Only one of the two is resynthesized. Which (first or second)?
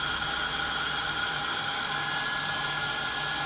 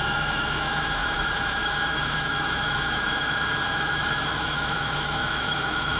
second